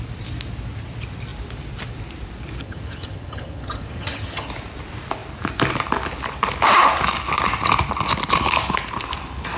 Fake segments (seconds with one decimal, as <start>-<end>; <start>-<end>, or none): 2.6-4.5